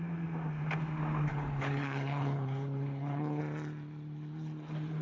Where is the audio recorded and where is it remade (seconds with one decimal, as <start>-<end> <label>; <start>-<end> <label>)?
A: 0.0-1.3 recorded; 1.3-3.4 remade; 3.4-5.0 recorded